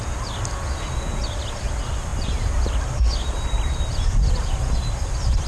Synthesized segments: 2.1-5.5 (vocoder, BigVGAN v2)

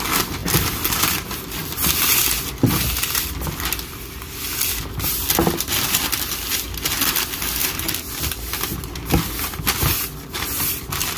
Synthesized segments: 0.4-1.0 (vocoder, BigVGAN v2); 1.6-2.3; 7.6-8.3